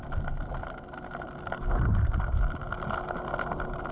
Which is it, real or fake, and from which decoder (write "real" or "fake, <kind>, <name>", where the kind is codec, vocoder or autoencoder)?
real